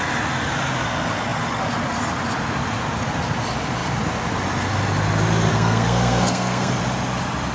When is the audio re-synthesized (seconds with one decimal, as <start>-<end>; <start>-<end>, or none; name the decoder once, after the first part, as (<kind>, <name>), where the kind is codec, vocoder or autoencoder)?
5.5-6.8 (codec, SNAC)